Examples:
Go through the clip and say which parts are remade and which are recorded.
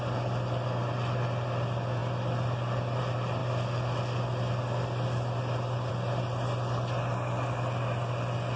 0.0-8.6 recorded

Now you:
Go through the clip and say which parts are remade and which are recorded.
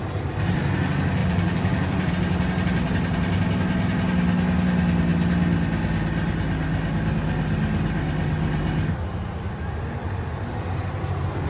0.0-1.2 recorded; 1.2-2.1 remade; 2.1-11.5 recorded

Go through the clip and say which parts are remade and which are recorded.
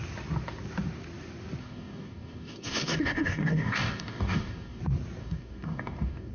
0.0-1.6 recorded; 1.6-4.8 remade; 4.8-5.2 recorded; 5.2-6.3 remade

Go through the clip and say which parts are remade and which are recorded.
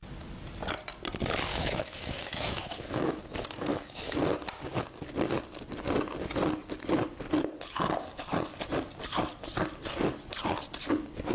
0.0-1.5 recorded; 1.5-3.2 remade; 3.2-3.7 recorded; 3.7-4.2 remade; 4.2-11.3 recorded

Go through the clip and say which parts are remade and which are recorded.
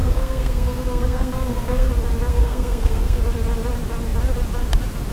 0.0-1.9 remade; 1.9-2.3 recorded; 2.3-3.2 remade; 3.2-5.1 recorded